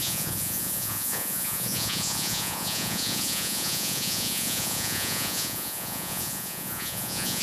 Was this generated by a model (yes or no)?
yes